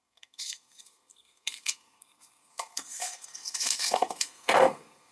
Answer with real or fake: fake